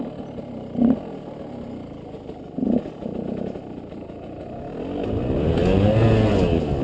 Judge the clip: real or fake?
real